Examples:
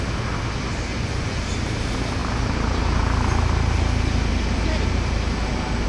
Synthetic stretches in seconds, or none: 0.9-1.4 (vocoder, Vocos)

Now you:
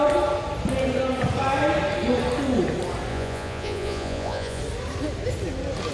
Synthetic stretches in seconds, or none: 3.1-4.6 (vocoder, Vocos)

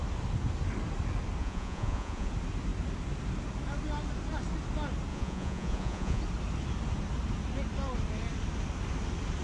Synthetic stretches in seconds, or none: 1.4-2.3 (vocoder, Vocos); 5.1-6.2

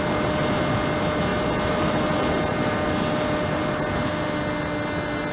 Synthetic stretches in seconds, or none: none

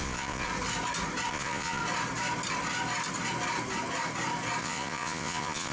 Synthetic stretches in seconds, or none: 0.0-0.5 (vocoder, Vocos); 1.3-1.8; 4.6-5.7

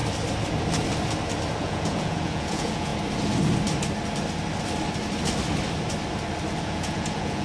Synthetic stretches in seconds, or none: 1.6-2.9 (vocoder, Vocos); 6.6-7.4

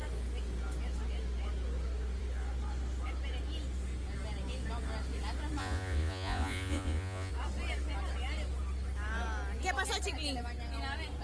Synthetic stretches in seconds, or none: 5.6-7.3 (vocoder, Vocos)

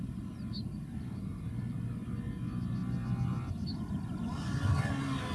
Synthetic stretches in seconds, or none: none